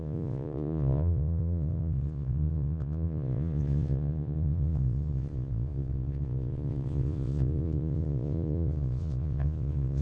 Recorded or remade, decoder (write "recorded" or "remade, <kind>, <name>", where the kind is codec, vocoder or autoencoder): remade, vocoder, Vocos